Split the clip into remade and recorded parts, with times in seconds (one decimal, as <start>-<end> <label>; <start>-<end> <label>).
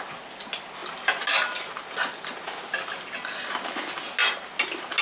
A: 0.0-5.0 recorded